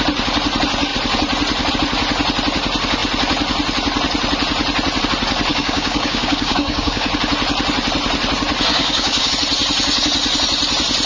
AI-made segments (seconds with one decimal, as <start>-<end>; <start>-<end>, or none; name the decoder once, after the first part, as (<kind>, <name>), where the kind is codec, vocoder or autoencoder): 5.5-7.1 (codec, DAC); 8.7-9.3